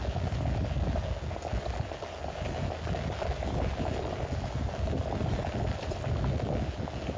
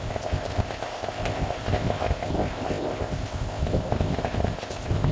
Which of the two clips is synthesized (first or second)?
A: second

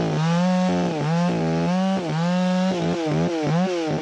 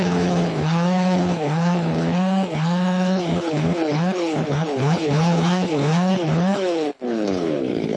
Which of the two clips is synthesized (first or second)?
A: second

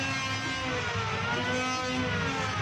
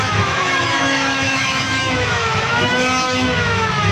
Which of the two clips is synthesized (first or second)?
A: second